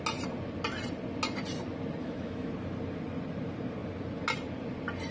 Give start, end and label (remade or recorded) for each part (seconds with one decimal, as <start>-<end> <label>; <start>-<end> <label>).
0.0-2.0 recorded; 2.0-2.5 remade; 2.5-5.1 recorded

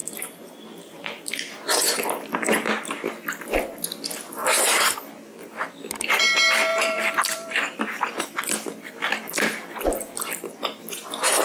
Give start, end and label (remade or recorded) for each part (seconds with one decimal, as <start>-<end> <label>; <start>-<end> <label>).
0.0-1.3 remade; 1.3-6.7 recorded; 6.7-8.2 remade; 8.2-11.4 recorded

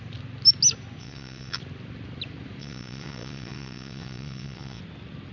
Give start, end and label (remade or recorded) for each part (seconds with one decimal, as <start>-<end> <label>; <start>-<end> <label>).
0.0-1.0 recorded; 1.0-1.6 remade; 1.6-2.6 recorded; 2.6-4.8 remade; 4.8-5.3 recorded

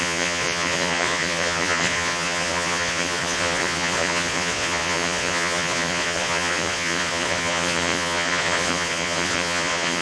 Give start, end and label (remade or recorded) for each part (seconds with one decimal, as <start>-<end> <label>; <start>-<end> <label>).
0.0-10.0 remade

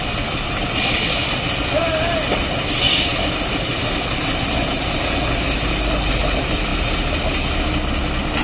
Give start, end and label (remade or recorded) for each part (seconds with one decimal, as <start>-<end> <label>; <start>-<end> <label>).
0.0-8.4 recorded

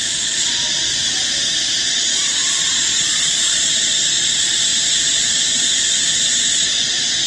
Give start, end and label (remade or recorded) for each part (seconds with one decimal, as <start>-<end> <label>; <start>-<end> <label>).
0.0-0.9 remade; 0.9-1.8 recorded; 1.8-4.7 remade; 4.7-6.5 recorded; 6.5-7.3 remade

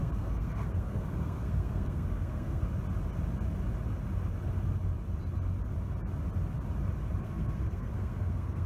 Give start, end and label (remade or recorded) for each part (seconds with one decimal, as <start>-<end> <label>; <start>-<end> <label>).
0.0-2.6 remade; 2.6-7.2 recorded; 7.2-8.7 remade

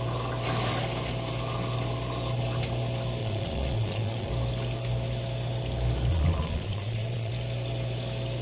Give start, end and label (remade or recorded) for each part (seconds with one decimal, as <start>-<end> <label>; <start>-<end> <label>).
0.0-3.2 recorded; 3.2-4.3 remade; 4.3-6.1 recorded; 6.1-7.3 remade; 7.3-8.4 recorded